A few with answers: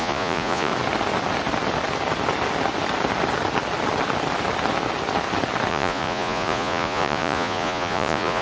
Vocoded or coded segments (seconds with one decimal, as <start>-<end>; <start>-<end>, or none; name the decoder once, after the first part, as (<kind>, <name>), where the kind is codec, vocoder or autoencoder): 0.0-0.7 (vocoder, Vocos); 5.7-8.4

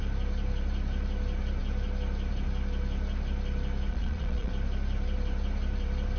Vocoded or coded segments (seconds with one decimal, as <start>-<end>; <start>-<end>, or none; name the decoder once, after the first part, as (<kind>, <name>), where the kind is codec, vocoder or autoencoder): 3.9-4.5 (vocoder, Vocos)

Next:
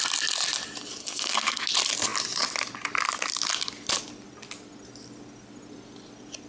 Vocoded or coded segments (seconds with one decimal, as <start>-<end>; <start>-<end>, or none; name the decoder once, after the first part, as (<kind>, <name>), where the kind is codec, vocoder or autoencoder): 1.0-1.6 (codec, SNAC)